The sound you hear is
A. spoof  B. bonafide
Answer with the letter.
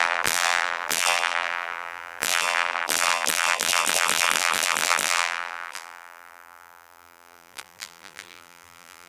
A